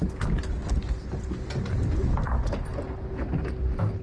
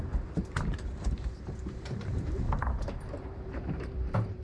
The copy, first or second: second